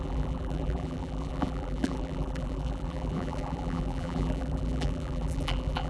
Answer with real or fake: fake